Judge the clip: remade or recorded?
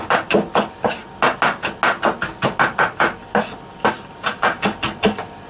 recorded